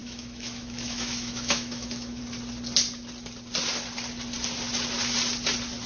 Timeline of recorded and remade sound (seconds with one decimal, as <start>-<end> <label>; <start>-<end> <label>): 0.0-2.2 remade; 2.2-5.9 recorded